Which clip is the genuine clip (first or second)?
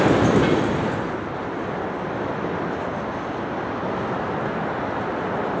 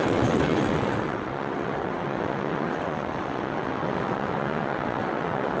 first